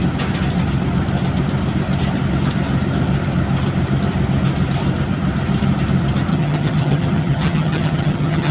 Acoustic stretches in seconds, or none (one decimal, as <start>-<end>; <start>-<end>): 0.0-6.3